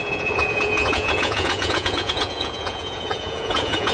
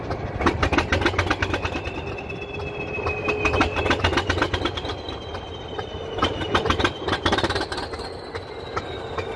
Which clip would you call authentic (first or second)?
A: second